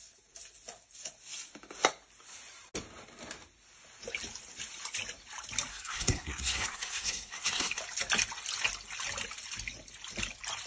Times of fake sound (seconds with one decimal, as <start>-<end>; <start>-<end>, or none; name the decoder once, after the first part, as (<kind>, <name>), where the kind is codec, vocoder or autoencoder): 5.7-7.8 (codec, SNAC)